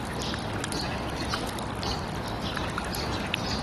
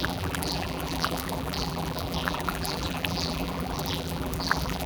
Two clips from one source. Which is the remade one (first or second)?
second